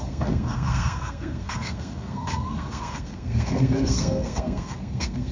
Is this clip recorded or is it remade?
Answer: remade